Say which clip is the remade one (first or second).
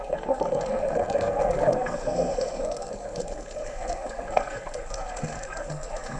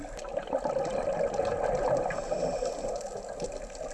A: first